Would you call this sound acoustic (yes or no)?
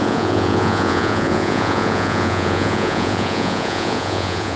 no